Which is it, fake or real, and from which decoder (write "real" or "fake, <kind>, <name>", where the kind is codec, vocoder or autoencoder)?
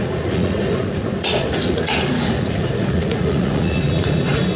fake, vocoder, Vocos